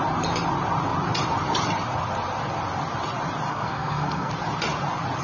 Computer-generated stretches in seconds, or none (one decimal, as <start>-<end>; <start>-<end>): 3.5-4.3

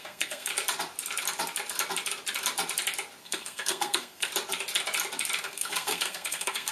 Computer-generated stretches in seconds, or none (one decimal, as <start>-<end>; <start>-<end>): 0.0-0.5; 3.2-4.3; 5.4-6.7